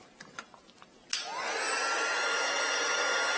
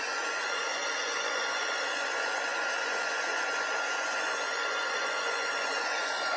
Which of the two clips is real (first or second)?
first